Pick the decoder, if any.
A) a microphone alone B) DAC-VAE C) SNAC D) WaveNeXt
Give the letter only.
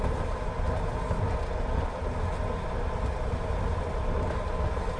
A